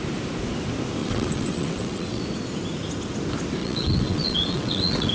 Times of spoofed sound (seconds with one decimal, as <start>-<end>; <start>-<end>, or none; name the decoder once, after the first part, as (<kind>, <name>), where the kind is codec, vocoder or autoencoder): 1.0-2.2 (vocoder, WaveNeXt); 3.6-5.1